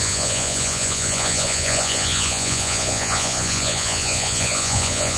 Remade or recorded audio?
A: remade